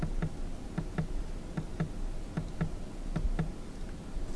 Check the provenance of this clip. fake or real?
real